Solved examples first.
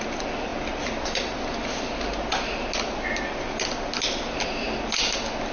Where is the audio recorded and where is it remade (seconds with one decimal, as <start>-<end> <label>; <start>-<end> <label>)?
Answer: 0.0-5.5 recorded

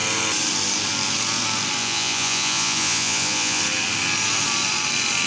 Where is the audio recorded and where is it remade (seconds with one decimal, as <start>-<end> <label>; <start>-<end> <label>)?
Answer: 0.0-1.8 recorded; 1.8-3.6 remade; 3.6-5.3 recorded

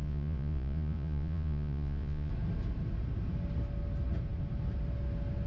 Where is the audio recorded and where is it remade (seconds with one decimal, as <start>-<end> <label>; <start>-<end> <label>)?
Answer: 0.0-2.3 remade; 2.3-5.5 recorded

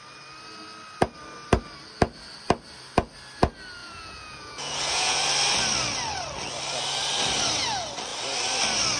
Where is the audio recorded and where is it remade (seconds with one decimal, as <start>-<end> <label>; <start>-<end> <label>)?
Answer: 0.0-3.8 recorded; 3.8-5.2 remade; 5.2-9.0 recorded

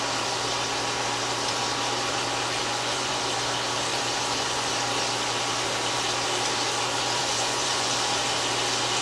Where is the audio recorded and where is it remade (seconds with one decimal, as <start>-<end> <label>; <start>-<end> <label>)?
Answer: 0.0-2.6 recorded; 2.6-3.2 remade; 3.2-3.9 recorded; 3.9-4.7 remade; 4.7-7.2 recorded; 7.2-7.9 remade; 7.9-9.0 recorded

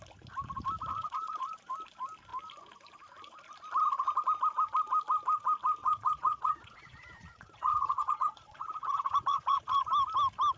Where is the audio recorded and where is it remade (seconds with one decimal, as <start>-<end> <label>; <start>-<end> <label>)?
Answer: 0.0-0.9 recorded; 0.9-1.7 remade; 1.7-5.8 recorded; 5.8-9.9 remade; 9.9-10.6 recorded

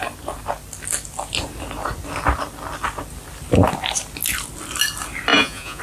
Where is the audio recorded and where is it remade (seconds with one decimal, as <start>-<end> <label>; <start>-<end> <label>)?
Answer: 0.0-5.3 recorded; 5.3-5.8 remade